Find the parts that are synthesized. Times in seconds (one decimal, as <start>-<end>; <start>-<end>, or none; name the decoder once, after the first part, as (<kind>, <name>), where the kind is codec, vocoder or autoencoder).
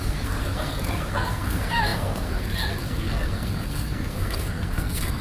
0.0-5.2 (codec, SNAC)